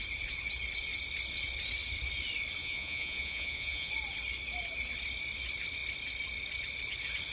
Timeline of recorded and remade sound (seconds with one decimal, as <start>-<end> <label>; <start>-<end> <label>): 0.0-2.6 recorded; 2.6-3.9 remade; 3.9-7.3 recorded